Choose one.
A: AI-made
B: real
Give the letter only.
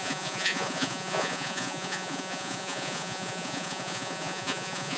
A